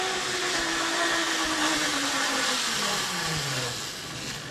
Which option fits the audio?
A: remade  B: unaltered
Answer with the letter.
B